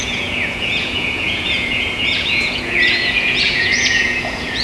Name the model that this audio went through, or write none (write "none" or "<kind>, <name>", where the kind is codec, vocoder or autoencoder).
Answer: vocoder, Vocos